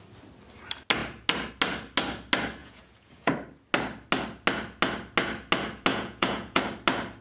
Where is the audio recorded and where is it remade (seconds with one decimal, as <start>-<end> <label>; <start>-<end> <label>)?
0.0-2.6 recorded; 2.6-3.3 remade; 3.3-5.9 recorded; 5.9-6.6 remade; 6.6-7.2 recorded